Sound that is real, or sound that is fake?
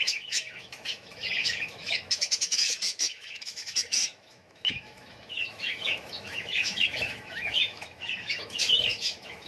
fake